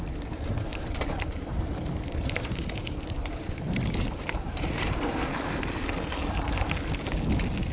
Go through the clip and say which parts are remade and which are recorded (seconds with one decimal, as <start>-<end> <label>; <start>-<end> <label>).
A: 0.0-0.7 recorded; 0.7-5.3 remade; 5.3-7.7 recorded